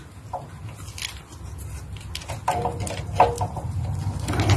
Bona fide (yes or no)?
yes